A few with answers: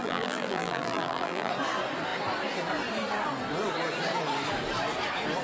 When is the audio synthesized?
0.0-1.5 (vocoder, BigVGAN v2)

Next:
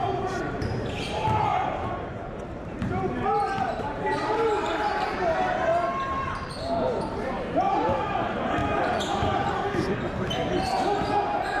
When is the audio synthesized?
0.0-8.6 (vocoder, BigVGAN v2)

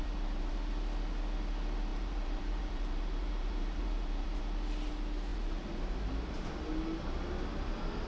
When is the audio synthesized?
0.0-0.5 (vocoder, BigVGAN v2); 1.9-4.4; 5.3-6.3

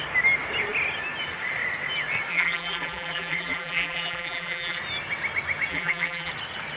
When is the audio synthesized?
2.3-4.8 (vocoder, BigVGAN v2); 5.7-6.3

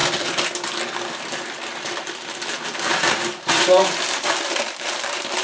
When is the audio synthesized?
2.9-5.4 (vocoder, BigVGAN v2)

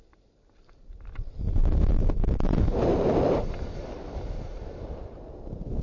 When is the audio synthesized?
0.0-5.8 (vocoder, BigVGAN v2)

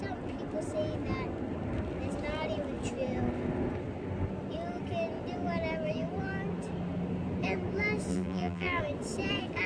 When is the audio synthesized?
8.1-8.8 (vocoder, BigVGAN v2)